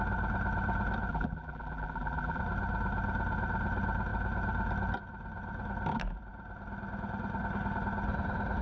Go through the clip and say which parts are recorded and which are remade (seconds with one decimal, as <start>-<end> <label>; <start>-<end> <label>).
0.0-1.1 recorded; 1.1-2.4 remade; 2.4-8.6 recorded